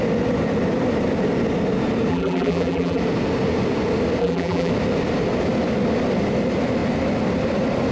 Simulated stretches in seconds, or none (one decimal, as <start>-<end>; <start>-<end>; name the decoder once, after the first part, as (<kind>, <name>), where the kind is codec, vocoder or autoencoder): 2.1-3.0 (vocoder, BigVGAN v2); 4.2-4.7

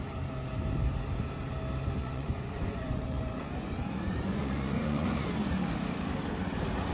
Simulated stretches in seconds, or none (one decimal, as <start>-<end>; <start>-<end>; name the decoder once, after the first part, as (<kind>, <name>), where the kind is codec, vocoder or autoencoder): 2.0-5.3 (vocoder, Vocos)

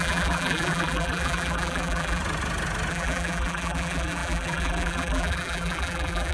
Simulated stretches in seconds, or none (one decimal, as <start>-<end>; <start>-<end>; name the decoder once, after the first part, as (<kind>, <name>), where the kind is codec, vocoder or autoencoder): 0.0-2.2 (vocoder, BigVGAN v2); 2.9-6.3

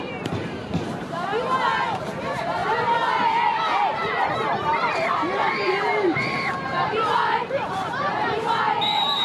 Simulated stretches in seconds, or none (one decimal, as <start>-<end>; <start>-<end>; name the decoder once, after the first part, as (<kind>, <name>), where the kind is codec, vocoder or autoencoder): 0.0-1.3 (vocoder, BigVGAN v2); 2.0-2.6; 4.1-9.2

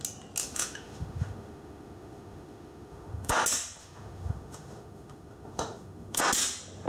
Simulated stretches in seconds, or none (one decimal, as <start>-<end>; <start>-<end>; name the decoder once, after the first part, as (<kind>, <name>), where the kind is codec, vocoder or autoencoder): 0.4-3.3 (autoencoder, DAC-VAE); 3.8-6.2